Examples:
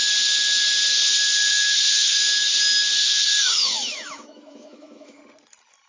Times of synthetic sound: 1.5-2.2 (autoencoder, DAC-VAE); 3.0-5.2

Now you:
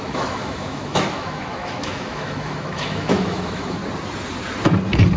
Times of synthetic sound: 0.0-3.8 (autoencoder, DAC-VAE)

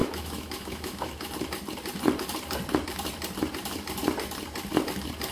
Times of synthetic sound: 0.0-1.3 (autoencoder, DAC-VAE)

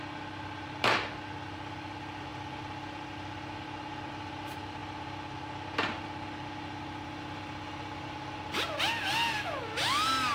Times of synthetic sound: none

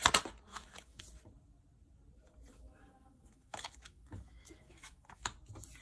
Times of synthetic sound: 0.5-1.0 (autoencoder, DAC-VAE); 2.5-5.3

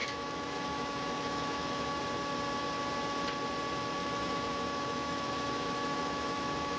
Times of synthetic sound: 0.0-2.0 (autoencoder, DAC-VAE); 4.0-6.8

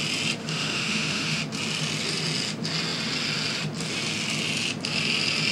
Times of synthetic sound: 0.4-1.4 (autoencoder, DAC-VAE)

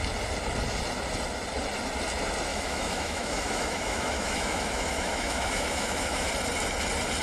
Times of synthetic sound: 2.5-6.3 (autoencoder, DAC-VAE)